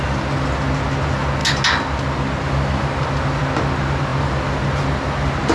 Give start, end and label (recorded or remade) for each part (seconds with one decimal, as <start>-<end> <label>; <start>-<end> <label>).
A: 0.0-5.5 recorded